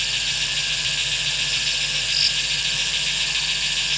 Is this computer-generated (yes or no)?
no